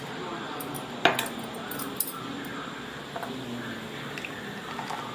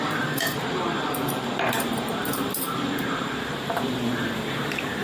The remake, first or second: second